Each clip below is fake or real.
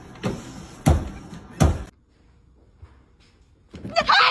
real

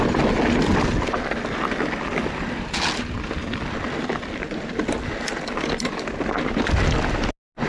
real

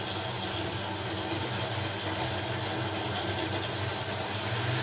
real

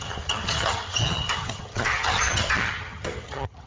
fake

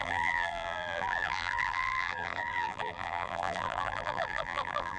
fake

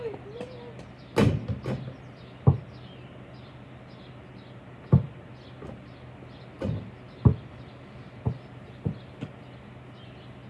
real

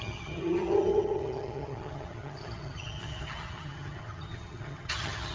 fake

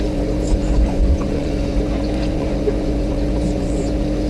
fake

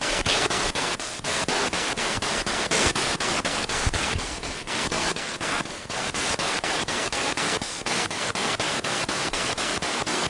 fake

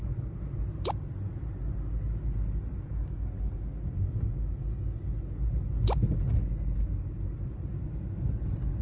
real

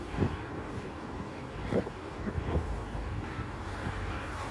fake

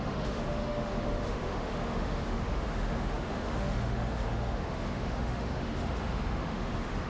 fake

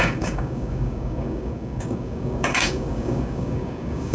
fake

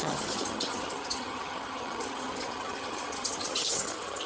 fake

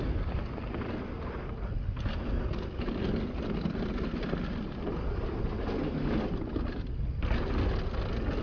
real